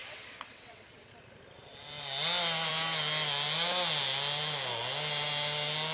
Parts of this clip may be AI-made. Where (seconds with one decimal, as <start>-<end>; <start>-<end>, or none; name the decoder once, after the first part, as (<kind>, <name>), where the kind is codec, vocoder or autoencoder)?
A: 0.0-1.1 (vocoder, WaveNeXt)